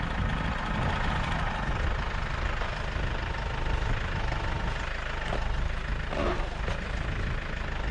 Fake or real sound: real